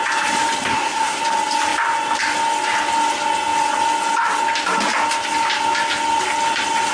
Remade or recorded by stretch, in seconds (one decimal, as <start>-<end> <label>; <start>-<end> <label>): 0.0-0.7 recorded; 0.7-1.2 remade; 1.2-6.9 recorded

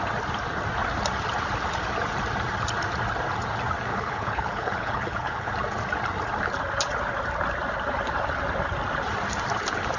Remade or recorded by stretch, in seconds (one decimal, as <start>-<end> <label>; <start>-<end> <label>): 0.0-3.9 recorded; 3.9-5.5 remade; 5.5-10.0 recorded